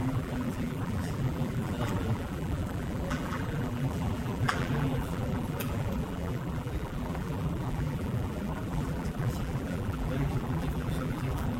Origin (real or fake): fake